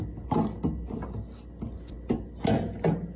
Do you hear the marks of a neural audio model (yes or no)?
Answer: no